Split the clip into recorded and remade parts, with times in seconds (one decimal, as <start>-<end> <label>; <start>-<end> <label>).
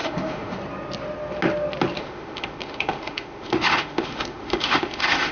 0.0-0.6 remade; 0.6-2.0 recorded; 2.0-5.3 remade